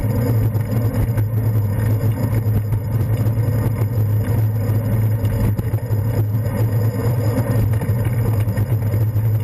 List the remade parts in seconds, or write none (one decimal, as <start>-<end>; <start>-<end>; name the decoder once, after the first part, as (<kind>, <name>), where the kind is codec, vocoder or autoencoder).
2.7-3.5 (vocoder, BigVGAN v2); 7.0-7.9